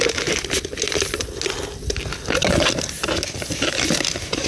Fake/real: real